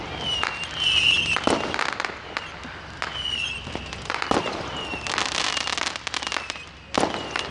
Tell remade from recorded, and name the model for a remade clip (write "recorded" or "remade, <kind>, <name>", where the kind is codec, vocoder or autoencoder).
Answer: recorded